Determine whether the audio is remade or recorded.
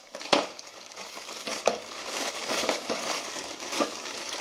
remade